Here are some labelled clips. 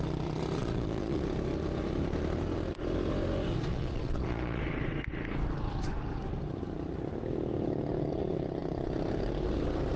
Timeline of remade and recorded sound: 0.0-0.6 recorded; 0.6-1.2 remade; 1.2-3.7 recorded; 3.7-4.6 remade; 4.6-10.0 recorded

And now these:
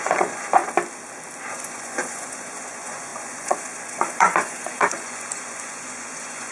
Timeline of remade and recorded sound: 0.0-0.6 remade; 0.6-1.5 recorded; 1.5-6.5 remade

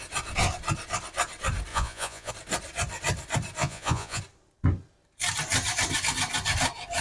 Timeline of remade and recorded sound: 0.0-1.7 recorded; 1.7-2.3 remade; 2.3-3.6 recorded; 3.6-4.2 remade; 4.2-7.0 recorded

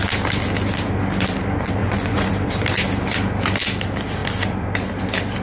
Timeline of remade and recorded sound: 0.0-1.8 recorded; 1.8-2.3 remade; 2.3-5.4 recorded

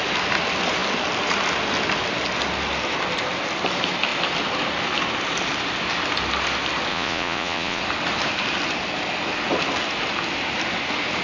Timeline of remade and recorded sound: 0.0-6.9 recorded; 6.9-7.8 remade; 7.8-11.2 recorded

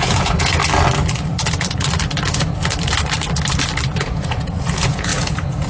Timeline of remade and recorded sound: 0.0-0.6 remade; 0.6-4.0 recorded; 4.0-5.7 remade